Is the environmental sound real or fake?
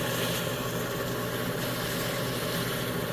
real